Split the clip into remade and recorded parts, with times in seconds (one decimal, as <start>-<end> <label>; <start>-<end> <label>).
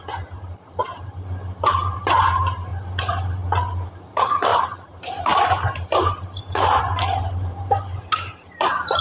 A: 0.0-2.7 remade; 2.7-4.1 recorded; 4.1-9.0 remade